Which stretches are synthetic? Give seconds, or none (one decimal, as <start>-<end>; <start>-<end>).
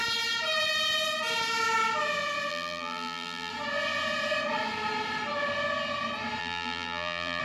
2.5-3.5; 6.4-7.4